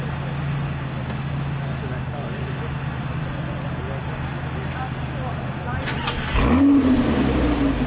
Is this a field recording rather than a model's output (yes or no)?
yes